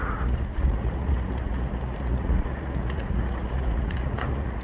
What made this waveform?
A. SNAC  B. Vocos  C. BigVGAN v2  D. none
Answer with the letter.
B